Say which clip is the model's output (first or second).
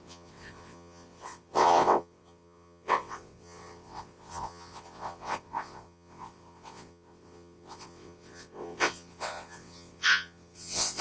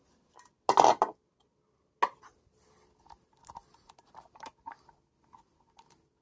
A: first